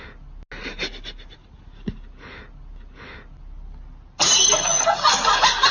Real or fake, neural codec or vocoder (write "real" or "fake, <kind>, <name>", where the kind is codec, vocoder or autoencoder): real